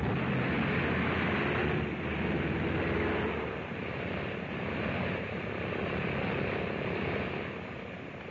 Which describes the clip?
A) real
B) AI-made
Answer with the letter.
A